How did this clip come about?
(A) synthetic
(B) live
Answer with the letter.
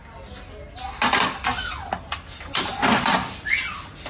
B